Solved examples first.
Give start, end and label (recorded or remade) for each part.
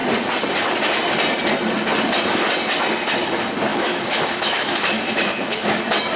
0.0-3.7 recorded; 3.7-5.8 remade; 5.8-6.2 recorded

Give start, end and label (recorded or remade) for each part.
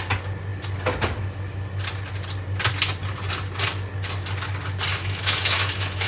0.0-4.9 recorded; 4.9-6.1 remade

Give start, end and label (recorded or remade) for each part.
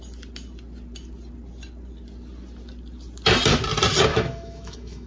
0.0-4.1 recorded; 4.1-5.1 remade